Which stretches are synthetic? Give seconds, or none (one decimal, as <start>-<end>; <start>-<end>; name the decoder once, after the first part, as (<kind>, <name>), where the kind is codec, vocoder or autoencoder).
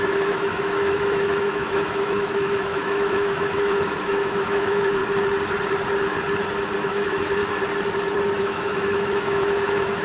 0.0-5.0 (autoencoder, DAC-VAE); 6.8-7.4; 8.4-10.0